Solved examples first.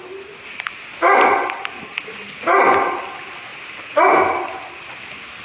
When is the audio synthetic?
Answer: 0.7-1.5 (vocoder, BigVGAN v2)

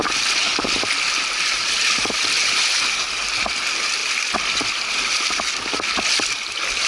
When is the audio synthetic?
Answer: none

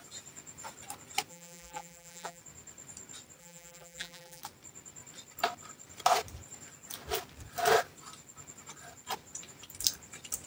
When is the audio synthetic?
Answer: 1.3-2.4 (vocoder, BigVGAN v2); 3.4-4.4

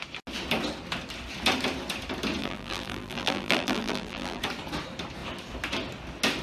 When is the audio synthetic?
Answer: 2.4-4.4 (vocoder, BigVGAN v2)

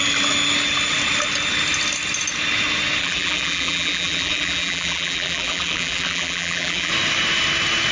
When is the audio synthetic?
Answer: 3.0-6.9 (vocoder, BigVGAN v2)

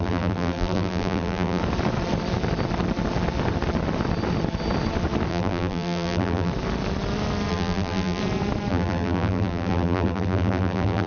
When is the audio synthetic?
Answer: 0.0-1.6 (vocoder, BigVGAN v2); 5.3-6.5; 7.5-8.2; 8.7-11.1

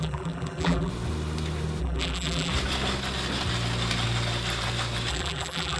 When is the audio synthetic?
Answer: 0.0-0.9 (vocoder, BigVGAN v2); 1.8-2.5; 5.1-5.8